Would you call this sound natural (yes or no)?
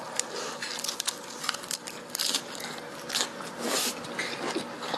yes